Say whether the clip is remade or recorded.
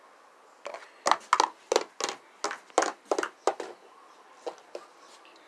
recorded